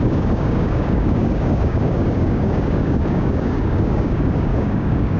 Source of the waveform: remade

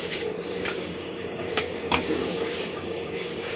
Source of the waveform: remade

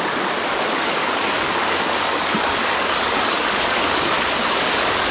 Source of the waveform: remade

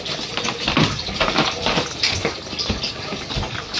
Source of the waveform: recorded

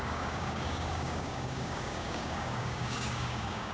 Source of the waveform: remade